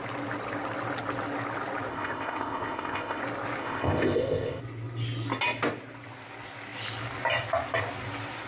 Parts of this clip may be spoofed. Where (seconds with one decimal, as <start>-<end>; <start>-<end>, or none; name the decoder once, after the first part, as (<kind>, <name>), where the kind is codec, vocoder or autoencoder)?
1.9-3.2 (codec, ZipCodec); 3.6-4.6